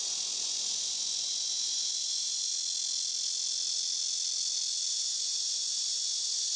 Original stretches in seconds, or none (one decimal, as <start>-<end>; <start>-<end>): 2.5-4.9